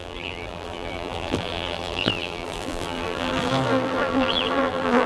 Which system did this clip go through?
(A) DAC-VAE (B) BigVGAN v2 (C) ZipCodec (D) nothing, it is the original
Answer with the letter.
B